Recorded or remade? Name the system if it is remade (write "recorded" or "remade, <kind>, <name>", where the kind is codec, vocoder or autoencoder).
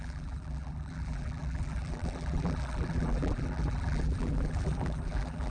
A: remade, vocoder, BigVGAN v2